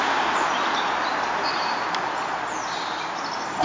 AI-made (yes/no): no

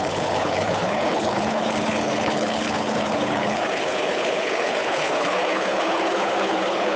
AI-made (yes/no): yes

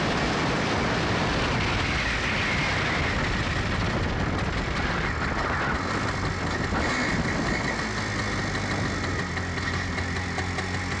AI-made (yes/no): no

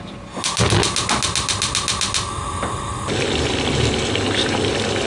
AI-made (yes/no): no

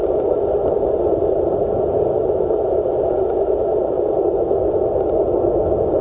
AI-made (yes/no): no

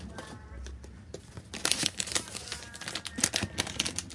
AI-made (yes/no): no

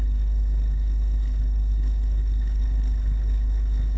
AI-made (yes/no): yes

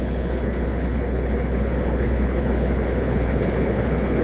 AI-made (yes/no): yes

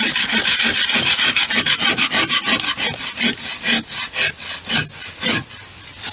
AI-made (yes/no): no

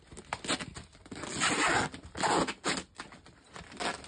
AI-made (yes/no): no